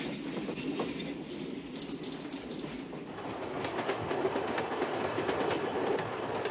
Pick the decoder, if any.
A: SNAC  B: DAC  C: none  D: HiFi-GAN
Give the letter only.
C